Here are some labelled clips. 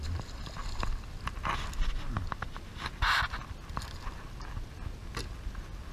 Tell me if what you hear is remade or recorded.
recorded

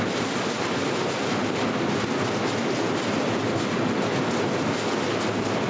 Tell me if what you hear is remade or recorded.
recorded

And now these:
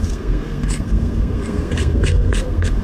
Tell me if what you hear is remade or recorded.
remade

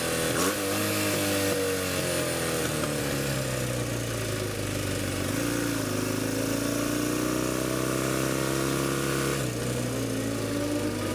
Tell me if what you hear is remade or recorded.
recorded